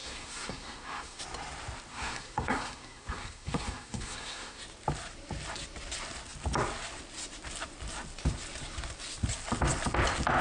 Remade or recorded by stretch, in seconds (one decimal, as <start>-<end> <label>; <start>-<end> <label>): 0.0-1.2 remade; 1.2-1.9 recorded; 1.9-4.6 remade; 4.6-10.4 recorded